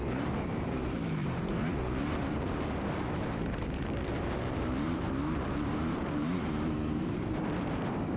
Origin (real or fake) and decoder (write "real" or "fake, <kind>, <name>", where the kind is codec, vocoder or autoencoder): fake, vocoder, BigVGAN v2